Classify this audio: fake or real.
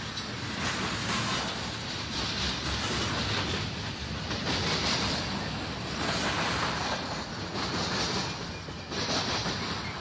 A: real